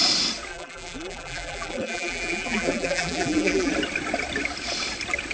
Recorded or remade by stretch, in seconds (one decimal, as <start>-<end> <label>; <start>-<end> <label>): 0.0-0.5 recorded; 0.5-3.7 remade; 3.7-5.3 recorded